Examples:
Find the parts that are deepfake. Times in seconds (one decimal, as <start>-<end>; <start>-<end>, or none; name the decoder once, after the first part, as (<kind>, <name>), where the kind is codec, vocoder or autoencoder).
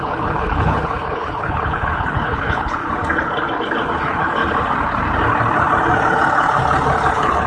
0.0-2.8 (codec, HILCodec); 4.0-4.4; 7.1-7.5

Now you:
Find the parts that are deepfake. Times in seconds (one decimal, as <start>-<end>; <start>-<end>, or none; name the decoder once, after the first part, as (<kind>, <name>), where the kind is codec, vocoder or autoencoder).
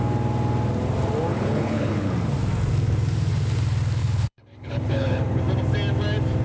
1.3-2.1 (codec, HILCodec); 4.0-5.4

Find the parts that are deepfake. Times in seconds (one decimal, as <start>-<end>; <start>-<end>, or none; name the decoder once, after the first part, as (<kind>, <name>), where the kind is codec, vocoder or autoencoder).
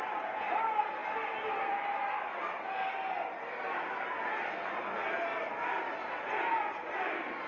none